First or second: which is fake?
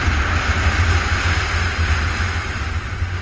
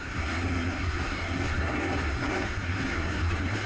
second